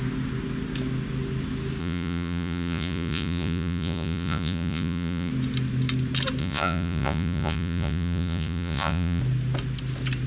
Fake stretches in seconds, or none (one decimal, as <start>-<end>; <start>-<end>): 1.8-5.3; 6.4-9.2